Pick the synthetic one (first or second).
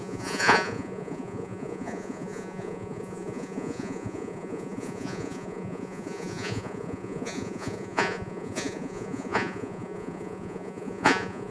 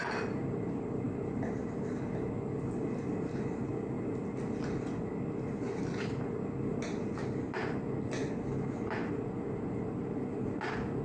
first